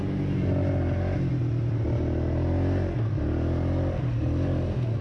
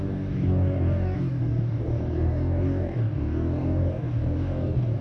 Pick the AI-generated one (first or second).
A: second